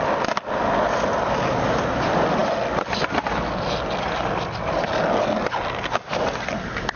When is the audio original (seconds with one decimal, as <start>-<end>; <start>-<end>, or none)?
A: 0.0-7.0